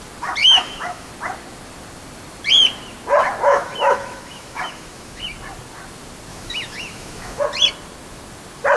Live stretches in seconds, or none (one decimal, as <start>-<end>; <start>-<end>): 0.0-0.4; 1.1-3.5; 5.2-6.3; 7.4-8.8